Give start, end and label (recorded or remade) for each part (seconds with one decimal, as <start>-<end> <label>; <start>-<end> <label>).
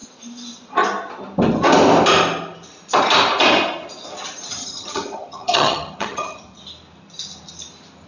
0.0-4.6 recorded; 4.6-6.6 remade; 6.6-8.1 recorded